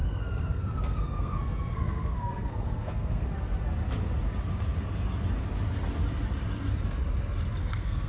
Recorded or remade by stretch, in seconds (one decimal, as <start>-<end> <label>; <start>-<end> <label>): 0.0-3.3 remade; 3.3-7.6 recorded; 7.6-8.1 remade